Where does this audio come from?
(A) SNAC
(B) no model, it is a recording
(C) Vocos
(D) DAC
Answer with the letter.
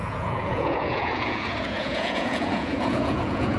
C